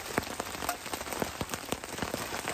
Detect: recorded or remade recorded